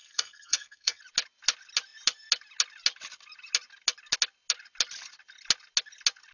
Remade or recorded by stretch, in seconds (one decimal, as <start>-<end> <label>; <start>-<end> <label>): 0.0-1.0 remade; 1.0-6.3 recorded